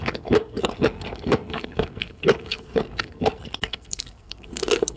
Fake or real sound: fake